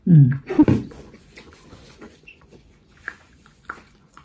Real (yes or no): no